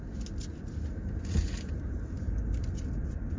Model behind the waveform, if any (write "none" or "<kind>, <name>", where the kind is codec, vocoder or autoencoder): none